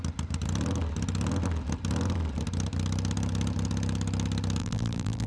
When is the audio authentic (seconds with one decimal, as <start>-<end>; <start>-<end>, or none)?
0.0-4.6